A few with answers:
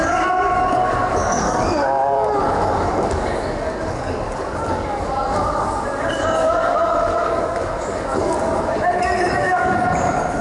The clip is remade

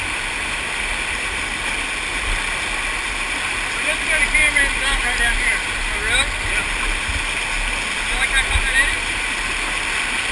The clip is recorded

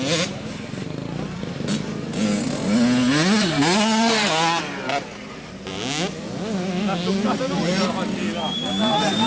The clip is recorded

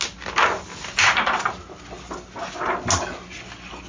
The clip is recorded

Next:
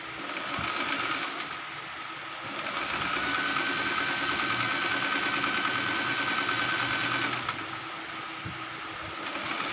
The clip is recorded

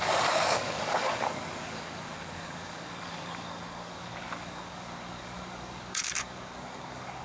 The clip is remade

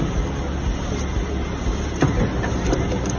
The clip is recorded